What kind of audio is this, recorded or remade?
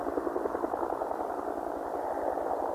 recorded